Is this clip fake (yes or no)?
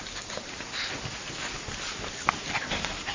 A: no